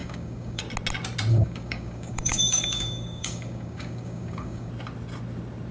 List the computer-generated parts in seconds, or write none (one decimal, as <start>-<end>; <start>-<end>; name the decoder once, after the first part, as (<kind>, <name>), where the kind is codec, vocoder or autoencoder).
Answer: 0.0-0.6 (codec, DAC); 1.3-4.7